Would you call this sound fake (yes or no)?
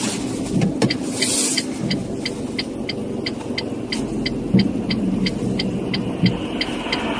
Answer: no